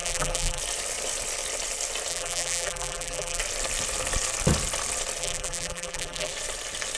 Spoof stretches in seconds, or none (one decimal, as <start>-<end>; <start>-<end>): 0.0-0.6; 2.1-3.4; 5.2-6.3